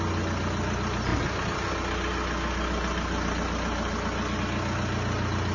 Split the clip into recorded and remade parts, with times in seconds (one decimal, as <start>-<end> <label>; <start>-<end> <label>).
0.0-5.5 recorded